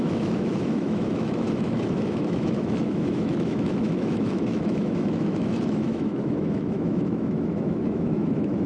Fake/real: fake